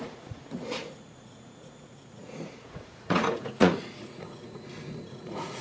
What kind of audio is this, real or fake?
fake